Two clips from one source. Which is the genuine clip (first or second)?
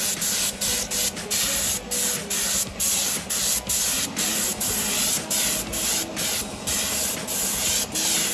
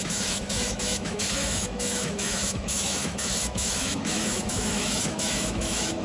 first